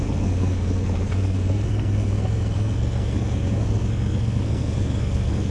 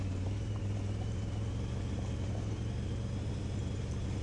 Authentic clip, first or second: second